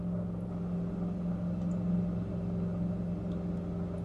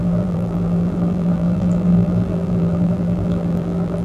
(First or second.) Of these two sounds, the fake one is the second